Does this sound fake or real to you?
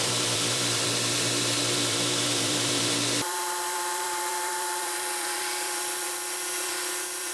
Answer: fake